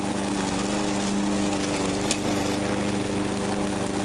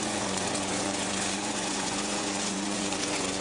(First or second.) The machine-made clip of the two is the second